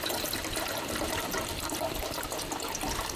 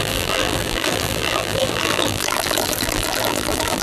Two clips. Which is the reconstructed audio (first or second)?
second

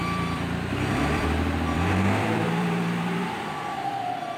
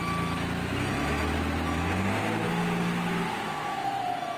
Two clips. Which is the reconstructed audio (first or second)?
first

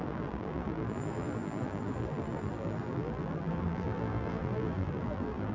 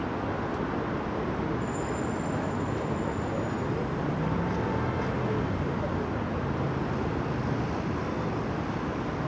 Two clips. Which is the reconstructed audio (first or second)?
first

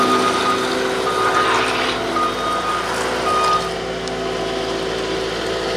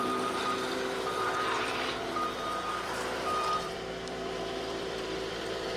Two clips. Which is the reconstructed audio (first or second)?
second